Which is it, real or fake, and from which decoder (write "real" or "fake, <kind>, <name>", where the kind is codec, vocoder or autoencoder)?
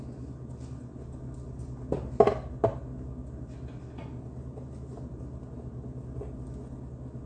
real